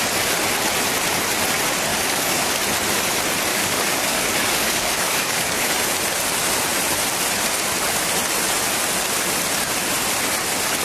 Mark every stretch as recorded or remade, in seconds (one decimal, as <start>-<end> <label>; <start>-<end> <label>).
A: 0.0-1.9 recorded; 1.9-2.5 remade; 2.5-3.5 recorded; 3.5-5.7 remade; 5.7-10.8 recorded